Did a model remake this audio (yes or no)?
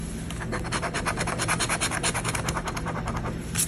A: no